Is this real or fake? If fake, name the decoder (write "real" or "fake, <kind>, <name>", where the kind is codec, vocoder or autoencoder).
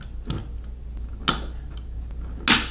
real